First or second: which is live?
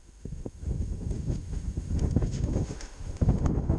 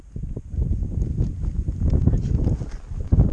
second